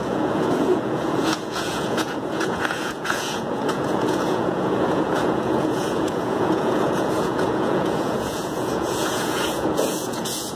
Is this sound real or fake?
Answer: fake